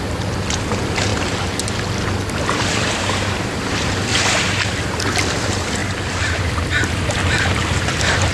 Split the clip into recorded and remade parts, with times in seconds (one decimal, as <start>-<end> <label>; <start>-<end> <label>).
0.0-1.1 remade; 1.1-2.3 recorded; 2.3-4.1 remade; 4.1-5.2 recorded; 5.2-8.3 remade